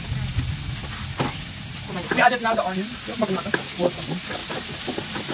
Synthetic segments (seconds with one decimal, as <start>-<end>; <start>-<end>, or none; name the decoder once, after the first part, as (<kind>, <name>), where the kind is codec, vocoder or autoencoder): 0.8-3.5 (vocoder, BigVGAN v2); 4.4-5.3